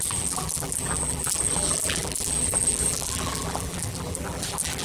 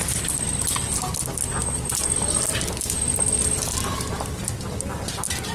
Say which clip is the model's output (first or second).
first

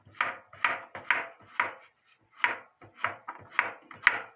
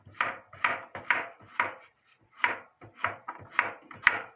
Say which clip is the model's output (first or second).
second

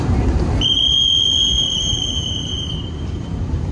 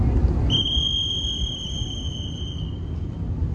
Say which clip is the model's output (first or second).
first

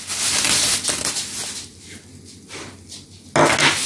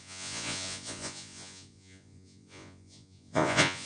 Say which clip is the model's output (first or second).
second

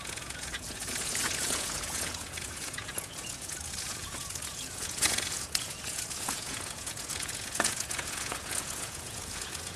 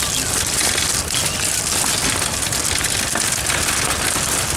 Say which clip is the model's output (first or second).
first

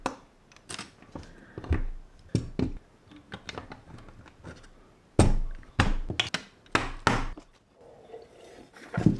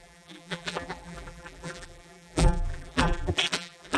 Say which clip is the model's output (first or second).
second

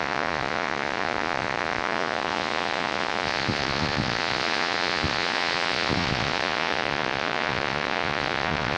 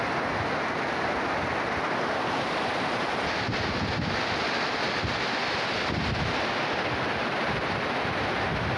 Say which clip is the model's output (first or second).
first